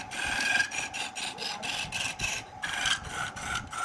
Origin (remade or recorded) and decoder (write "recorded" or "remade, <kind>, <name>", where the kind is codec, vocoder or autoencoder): recorded